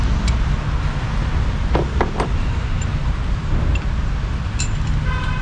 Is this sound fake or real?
real